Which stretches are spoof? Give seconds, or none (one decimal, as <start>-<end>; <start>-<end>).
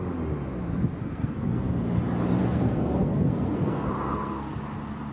1.0-1.7; 2.4-4.6